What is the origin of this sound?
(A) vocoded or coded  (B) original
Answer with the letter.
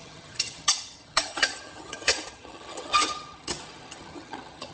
A